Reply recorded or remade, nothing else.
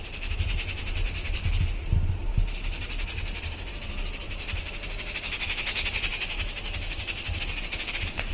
recorded